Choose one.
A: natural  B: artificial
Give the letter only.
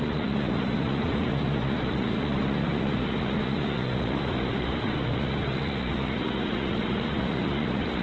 B